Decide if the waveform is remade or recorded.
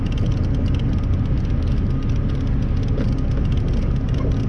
recorded